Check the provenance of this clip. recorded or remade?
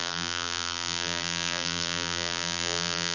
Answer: remade